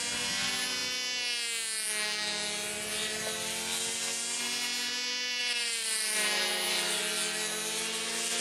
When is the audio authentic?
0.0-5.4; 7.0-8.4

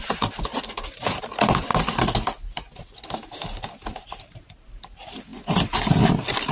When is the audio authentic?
1.7-3.7